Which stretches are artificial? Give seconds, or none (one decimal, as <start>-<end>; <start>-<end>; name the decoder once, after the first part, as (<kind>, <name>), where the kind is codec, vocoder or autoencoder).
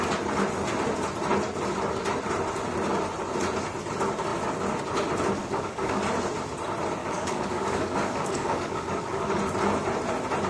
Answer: 5.4-6.0 (codec, DAC); 7.0-9.4